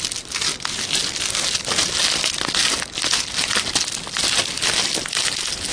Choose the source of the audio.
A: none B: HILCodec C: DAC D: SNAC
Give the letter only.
A